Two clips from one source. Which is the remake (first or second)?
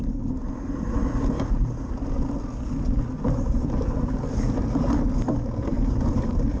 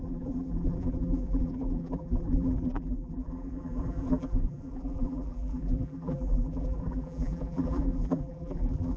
second